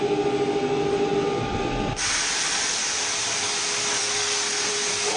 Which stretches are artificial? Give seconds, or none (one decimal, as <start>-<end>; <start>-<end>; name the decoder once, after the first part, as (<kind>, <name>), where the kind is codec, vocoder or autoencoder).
4.0-4.7 (codec, SNAC)